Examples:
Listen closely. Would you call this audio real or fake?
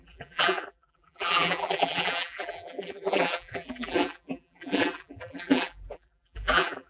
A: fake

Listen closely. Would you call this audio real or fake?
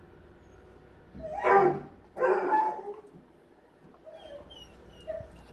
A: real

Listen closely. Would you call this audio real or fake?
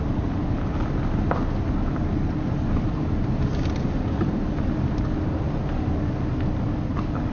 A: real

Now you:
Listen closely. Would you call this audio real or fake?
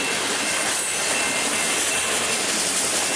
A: real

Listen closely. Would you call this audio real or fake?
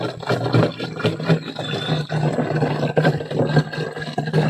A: real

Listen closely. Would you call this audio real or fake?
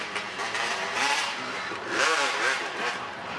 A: fake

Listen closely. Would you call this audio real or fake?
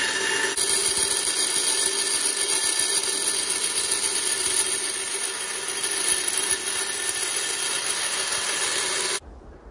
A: real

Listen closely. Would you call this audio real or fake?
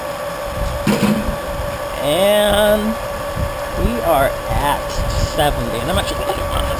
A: real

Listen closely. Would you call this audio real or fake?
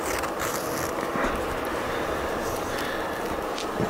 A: real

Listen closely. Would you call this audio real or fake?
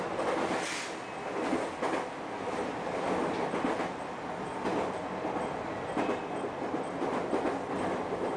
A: real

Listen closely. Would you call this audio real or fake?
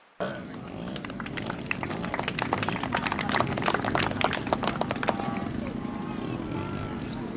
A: real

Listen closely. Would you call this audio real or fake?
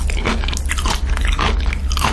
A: real